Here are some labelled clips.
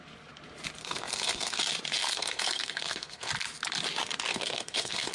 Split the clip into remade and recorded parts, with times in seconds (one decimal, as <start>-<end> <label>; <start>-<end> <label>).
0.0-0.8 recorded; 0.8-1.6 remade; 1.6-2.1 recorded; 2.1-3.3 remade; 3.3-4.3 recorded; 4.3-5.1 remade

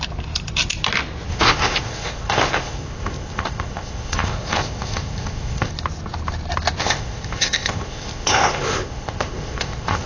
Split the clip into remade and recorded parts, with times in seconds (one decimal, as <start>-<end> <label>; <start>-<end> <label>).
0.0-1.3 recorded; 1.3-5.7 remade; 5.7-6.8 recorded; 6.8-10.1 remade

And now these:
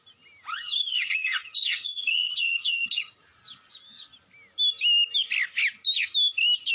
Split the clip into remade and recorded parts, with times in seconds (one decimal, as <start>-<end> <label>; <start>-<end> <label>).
0.0-0.5 recorded; 0.5-3.1 remade; 3.1-6.7 recorded